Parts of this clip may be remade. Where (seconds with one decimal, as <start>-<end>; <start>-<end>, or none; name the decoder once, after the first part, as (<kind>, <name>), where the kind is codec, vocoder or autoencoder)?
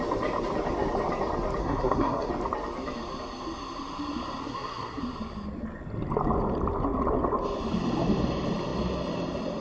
1.6-2.3 (codec, SNAC); 4.4-5.0